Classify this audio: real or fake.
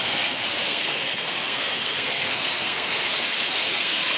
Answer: fake